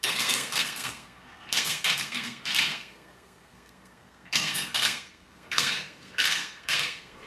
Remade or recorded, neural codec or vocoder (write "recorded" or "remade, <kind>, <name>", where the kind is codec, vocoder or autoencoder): remade, codec, SNAC